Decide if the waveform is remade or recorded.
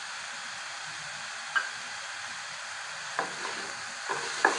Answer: recorded